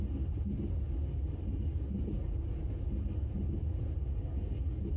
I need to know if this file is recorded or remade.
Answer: recorded